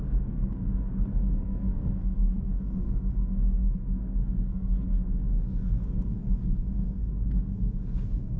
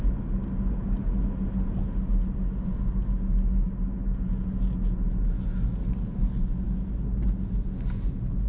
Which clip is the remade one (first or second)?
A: first